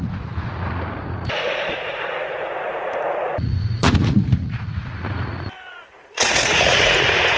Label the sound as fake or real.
fake